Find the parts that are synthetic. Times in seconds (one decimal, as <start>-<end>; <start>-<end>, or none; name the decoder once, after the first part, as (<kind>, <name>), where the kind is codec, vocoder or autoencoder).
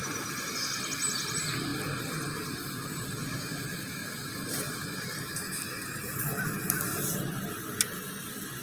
none